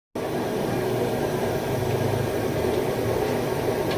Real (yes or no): yes